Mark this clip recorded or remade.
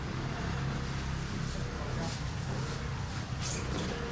recorded